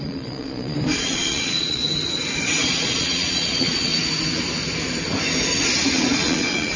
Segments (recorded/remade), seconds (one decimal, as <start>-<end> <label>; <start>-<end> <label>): 0.0-1.8 remade; 1.8-2.7 recorded; 2.7-3.9 remade; 3.9-5.9 recorded; 5.9-6.8 remade